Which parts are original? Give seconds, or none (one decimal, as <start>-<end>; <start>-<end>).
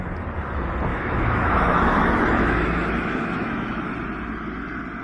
0.0-0.9; 3.9-5.0